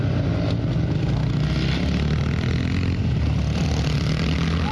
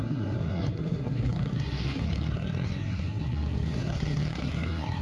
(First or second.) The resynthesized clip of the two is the second